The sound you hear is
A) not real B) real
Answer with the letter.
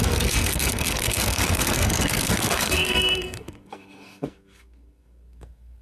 A